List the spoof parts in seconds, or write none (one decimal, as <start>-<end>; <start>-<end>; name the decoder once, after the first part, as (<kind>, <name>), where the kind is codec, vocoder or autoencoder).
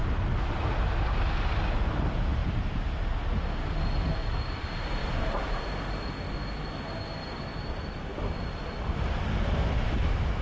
5.0-5.6 (vocoder, BigVGAN v2); 7.2-8.3